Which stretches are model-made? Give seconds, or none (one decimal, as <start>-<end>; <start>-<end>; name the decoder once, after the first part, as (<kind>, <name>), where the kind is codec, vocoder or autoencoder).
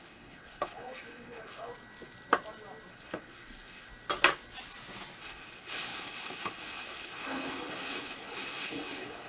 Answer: 0.0-1.7 (codec, HILCodec); 2.9-3.9; 5.2-9.3